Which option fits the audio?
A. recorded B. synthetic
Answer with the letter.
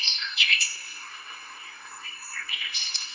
B